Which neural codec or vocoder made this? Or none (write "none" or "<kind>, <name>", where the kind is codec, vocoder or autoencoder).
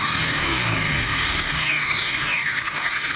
codec, DAC